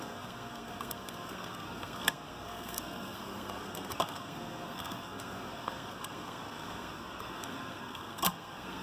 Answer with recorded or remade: remade